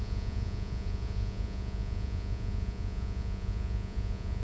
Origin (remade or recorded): remade